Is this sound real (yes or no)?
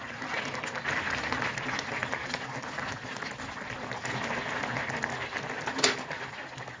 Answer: yes